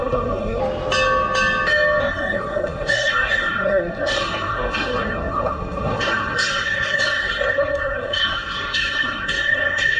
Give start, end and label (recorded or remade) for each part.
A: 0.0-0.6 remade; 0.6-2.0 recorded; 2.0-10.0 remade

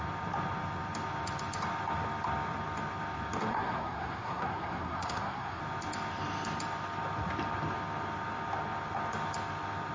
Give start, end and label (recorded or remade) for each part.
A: 0.0-3.5 recorded; 3.5-5.6 remade; 5.6-9.9 recorded

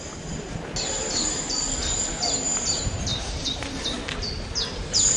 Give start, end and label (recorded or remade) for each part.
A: 0.0-3.1 recorded; 3.1-3.8 remade; 3.8-5.2 recorded

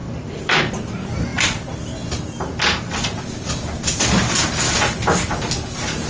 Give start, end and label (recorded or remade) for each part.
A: 0.0-0.6 remade; 0.6-6.1 recorded